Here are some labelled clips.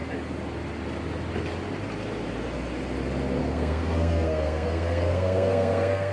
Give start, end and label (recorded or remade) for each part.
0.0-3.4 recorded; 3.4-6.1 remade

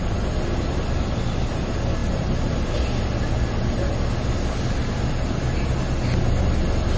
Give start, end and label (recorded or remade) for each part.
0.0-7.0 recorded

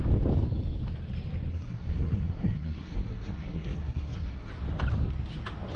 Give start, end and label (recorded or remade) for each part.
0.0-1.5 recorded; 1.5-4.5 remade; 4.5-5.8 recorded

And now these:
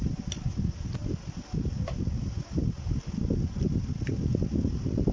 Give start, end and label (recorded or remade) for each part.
0.0-5.1 recorded

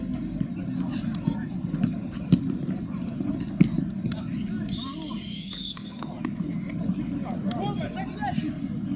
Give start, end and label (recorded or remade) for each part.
0.0-5.3 recorded; 5.3-6.1 remade; 6.1-9.0 recorded